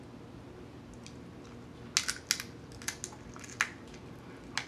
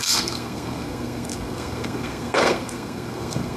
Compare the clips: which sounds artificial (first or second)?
second